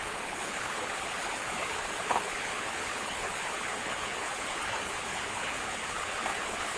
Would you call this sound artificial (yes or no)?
yes